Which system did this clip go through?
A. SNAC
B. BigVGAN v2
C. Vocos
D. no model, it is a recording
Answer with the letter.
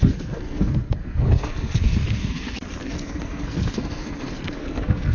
A